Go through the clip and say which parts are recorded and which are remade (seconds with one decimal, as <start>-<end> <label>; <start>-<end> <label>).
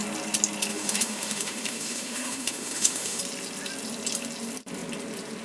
0.0-0.7 recorded; 0.7-3.2 remade; 3.2-5.4 recorded